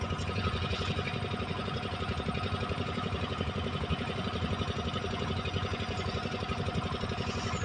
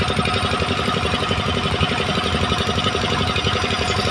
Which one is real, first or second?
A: second